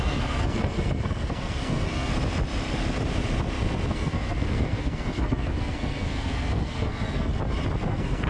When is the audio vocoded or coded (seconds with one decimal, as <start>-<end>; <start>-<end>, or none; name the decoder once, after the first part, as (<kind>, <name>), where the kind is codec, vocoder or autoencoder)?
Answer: 0.0-2.1 (codec, SNAC); 3.9-7.3; 7.9-8.3